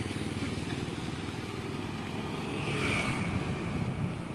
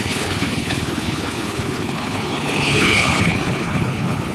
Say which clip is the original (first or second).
first